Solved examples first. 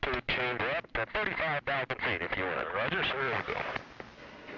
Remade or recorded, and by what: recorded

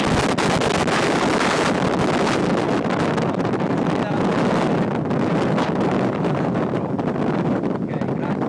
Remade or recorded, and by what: recorded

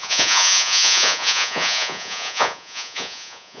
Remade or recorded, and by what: remade, vocoder, Vocos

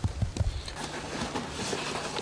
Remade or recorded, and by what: recorded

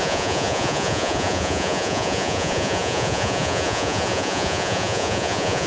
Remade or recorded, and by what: remade, vocoder, Vocos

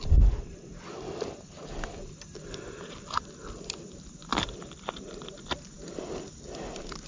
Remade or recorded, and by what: recorded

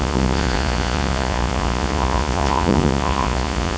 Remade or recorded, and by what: remade, vocoder, Vocos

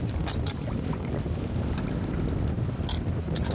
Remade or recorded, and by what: recorded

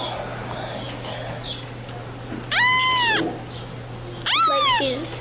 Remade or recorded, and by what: recorded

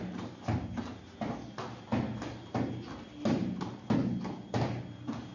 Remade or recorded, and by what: recorded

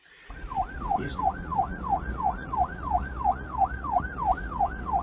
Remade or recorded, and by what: remade, vocoder, Vocos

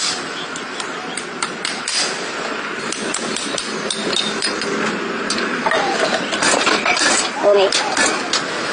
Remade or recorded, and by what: recorded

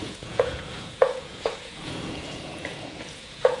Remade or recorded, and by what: remade, vocoder, Vocos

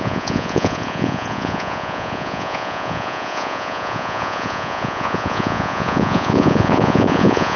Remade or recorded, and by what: remade, vocoder, Vocos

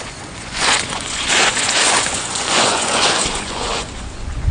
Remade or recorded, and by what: remade, vocoder, Vocos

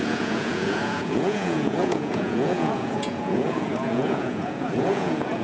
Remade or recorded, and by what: remade, vocoder, Vocos